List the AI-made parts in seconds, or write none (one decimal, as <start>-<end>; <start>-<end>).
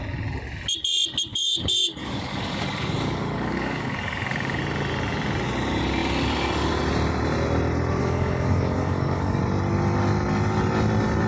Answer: 1.3-4.6; 8.0-9.4